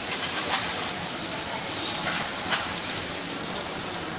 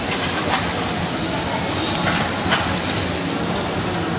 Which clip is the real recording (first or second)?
second